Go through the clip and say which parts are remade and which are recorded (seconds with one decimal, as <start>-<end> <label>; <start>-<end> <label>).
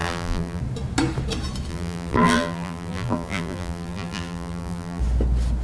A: 0.0-0.6 remade; 0.6-1.7 recorded; 1.7-5.0 remade; 5.0-5.6 recorded